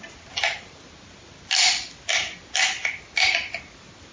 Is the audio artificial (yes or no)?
no